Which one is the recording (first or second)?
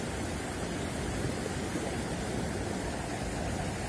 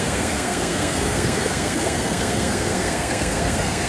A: first